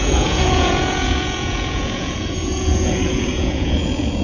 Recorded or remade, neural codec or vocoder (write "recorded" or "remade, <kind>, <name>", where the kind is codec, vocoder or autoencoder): remade, vocoder, Vocos